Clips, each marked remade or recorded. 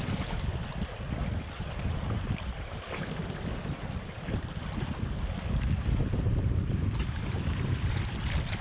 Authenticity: recorded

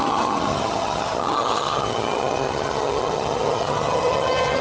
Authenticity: remade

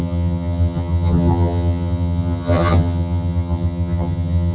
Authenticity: remade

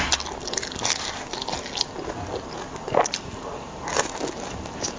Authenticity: recorded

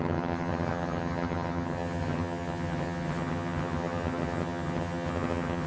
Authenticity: remade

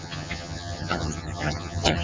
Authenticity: remade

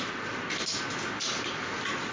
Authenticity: recorded